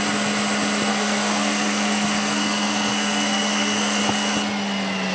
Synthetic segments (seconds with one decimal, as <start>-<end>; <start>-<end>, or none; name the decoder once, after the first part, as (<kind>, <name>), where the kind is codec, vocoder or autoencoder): 0.9-4.0 (codec, SNAC)